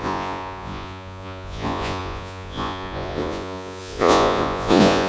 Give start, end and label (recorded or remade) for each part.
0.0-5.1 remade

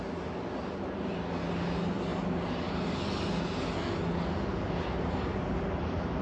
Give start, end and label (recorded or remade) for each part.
0.0-6.2 recorded

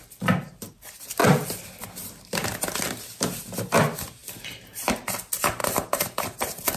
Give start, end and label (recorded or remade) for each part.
0.0-5.6 recorded; 5.6-6.2 remade; 6.2-6.8 recorded

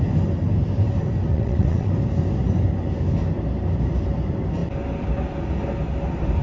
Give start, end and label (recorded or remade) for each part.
0.0-1.3 recorded; 1.3-1.9 remade; 1.9-6.4 recorded

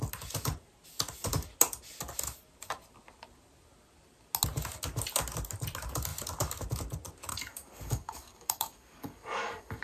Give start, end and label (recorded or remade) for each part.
0.0-7.3 recorded; 7.3-9.8 remade

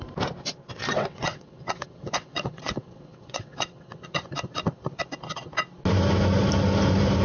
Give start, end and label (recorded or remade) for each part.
0.0-0.8 recorded; 0.8-4.3 remade; 4.3-7.2 recorded

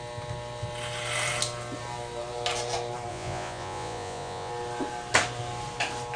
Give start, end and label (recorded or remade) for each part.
0.0-3.1 recorded; 3.1-4.5 remade; 4.5-6.2 recorded